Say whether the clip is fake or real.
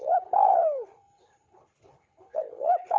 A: fake